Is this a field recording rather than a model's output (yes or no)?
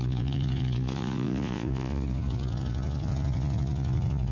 no